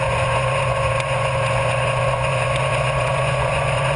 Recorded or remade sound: remade